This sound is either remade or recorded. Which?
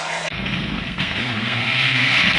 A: remade